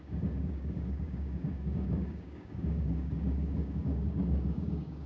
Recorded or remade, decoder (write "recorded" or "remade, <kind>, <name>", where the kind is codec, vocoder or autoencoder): remade, codec, DAC